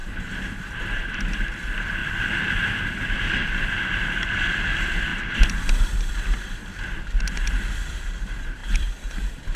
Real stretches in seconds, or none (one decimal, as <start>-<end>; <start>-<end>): 0.0-0.7; 2.0-2.9